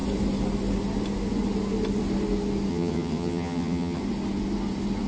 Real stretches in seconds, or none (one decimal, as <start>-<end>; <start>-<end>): 0.0-2.7; 4.0-5.1